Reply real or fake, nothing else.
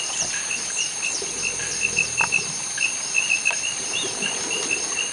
fake